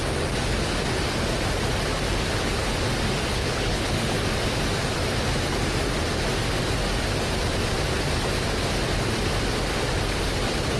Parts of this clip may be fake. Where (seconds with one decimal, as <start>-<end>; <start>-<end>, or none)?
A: 3.3-4.1

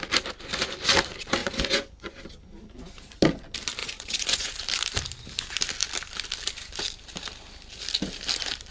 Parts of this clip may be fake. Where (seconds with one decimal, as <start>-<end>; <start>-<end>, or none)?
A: 1.4-2.2; 3.8-4.6

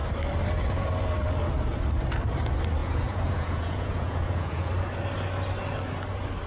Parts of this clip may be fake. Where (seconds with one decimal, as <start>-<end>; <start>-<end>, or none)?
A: 2.8-4.7